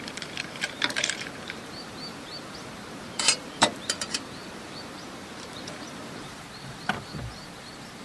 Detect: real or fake fake